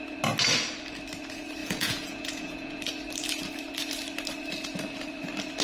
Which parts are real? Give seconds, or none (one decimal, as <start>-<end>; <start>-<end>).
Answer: 0.0-1.6; 2.8-5.6